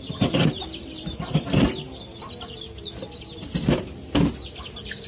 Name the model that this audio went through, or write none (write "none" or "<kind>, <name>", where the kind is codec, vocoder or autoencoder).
none